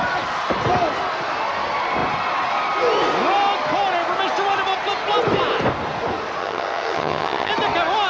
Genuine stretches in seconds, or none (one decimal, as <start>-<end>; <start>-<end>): 0.0-6.4; 7.5-8.1